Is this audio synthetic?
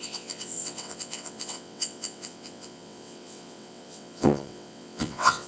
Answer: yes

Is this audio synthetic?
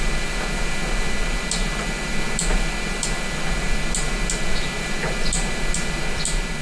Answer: no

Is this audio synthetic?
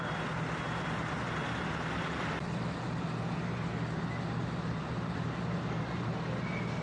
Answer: no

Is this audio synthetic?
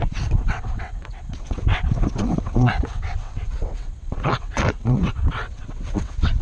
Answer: yes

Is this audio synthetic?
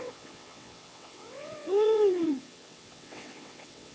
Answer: yes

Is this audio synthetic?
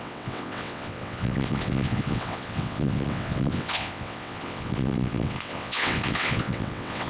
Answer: yes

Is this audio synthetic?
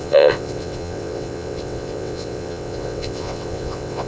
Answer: yes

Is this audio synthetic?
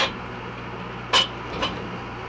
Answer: no